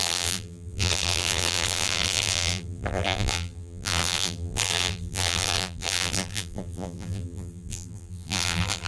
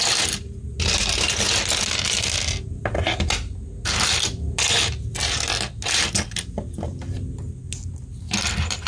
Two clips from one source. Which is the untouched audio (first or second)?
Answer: second